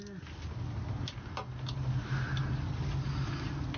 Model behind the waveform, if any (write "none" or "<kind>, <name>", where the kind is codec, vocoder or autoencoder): none